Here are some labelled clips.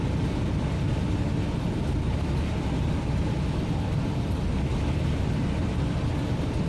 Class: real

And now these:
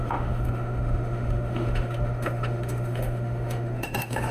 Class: fake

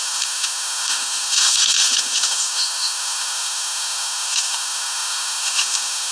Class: fake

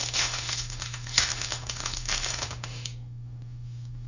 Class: fake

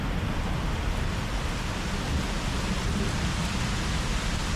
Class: real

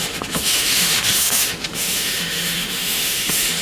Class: fake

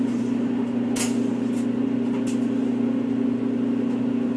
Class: real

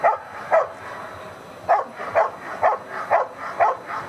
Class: real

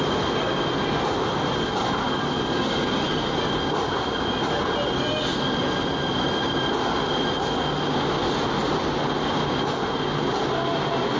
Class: real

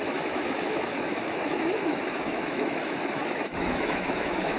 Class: fake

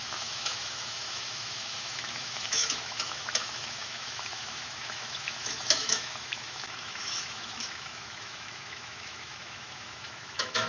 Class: fake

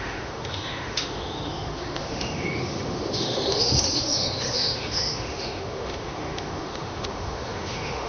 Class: fake